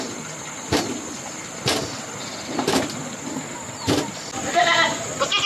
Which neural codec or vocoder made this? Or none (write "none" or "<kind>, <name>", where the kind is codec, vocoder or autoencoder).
none